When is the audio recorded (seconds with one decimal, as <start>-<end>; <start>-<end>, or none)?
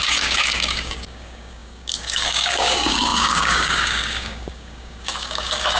none